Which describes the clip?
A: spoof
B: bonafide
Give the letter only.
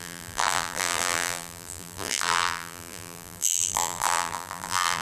A